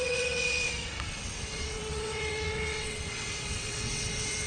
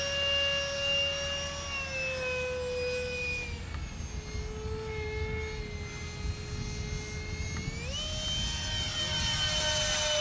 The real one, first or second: second